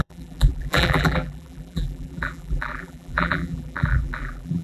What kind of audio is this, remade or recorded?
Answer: remade